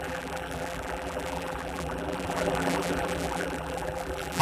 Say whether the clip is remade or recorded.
remade